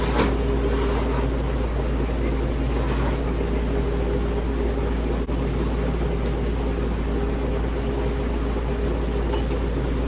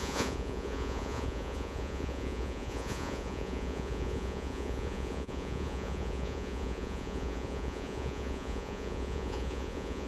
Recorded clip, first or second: first